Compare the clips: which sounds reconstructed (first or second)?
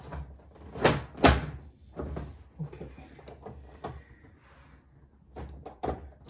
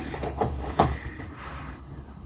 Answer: second